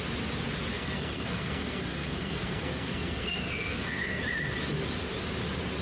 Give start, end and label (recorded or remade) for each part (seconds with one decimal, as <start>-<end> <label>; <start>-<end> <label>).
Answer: 0.0-0.7 recorded; 0.7-4.2 remade; 4.2-5.8 recorded